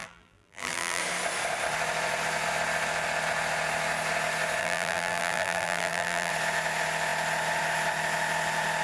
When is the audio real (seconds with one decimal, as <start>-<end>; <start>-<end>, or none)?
1.0-4.6; 6.3-8.8